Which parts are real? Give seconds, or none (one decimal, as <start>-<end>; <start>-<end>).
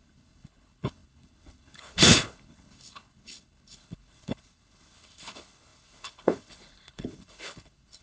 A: none